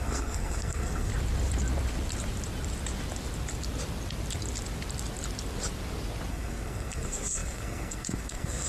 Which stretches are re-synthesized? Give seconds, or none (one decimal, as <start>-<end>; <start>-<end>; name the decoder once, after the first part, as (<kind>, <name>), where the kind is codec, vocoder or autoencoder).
0.0-1.1 (codec, SNAC); 6.3-8.7